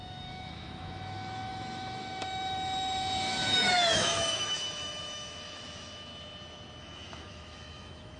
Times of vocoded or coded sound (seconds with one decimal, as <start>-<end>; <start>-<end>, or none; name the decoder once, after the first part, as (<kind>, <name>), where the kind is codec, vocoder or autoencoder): 0.0-6.1 (autoencoder, DAC-VAE); 6.8-8.2